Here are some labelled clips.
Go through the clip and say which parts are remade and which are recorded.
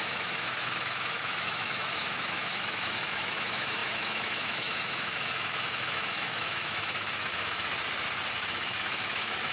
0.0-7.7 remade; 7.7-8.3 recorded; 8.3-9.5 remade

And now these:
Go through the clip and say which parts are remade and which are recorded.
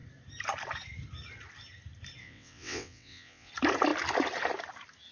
0.0-2.2 recorded; 2.2-3.5 remade; 3.5-5.1 recorded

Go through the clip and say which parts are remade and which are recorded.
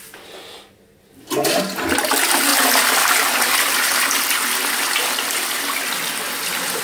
0.0-6.8 recorded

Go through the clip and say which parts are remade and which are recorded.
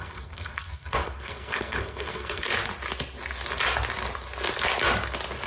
0.0-2.5 remade; 2.5-5.5 recorded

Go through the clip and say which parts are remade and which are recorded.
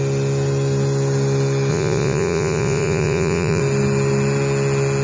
0.0-1.7 recorded; 1.7-3.6 remade; 3.6-5.0 recorded